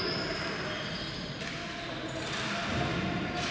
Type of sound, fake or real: real